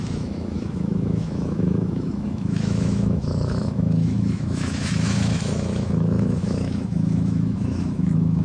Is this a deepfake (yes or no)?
yes